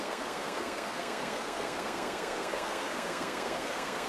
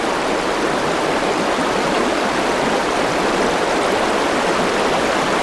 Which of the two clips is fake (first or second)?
first